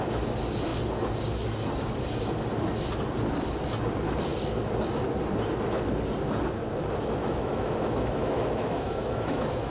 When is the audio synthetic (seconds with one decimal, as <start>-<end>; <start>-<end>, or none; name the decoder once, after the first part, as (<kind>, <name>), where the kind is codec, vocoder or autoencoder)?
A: 7.2-9.7 (autoencoder, DAC-VAE)